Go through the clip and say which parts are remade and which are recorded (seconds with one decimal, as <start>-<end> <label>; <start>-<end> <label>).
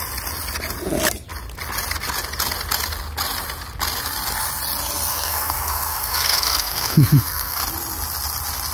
0.0-5.1 recorded; 5.1-7.6 remade; 7.6-8.7 recorded